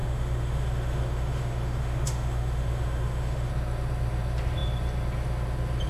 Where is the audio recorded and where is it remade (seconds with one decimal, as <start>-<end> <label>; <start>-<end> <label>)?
0.0-3.5 remade; 3.5-5.9 recorded